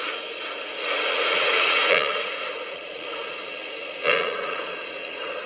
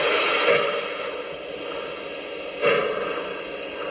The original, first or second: second